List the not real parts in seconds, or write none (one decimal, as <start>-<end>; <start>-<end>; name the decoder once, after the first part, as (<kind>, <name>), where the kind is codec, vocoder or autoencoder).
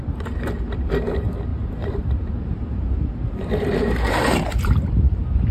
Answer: 0.0-5.5 (vocoder, BigVGAN v2)